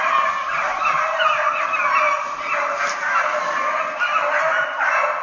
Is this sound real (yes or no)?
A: yes